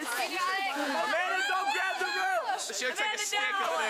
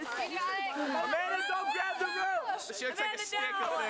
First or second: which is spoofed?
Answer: first